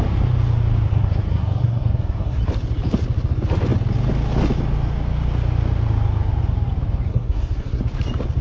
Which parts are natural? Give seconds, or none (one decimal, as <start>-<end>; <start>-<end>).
0.0-0.9; 2.4-7.1; 7.8-8.4